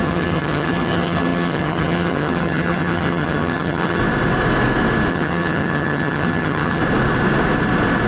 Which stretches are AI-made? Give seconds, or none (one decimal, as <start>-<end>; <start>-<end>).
0.0-4.0; 5.1-6.8